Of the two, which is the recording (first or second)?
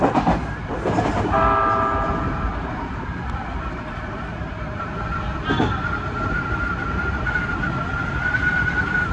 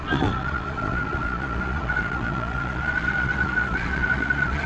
first